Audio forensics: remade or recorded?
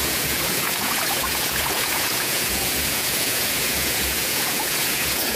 remade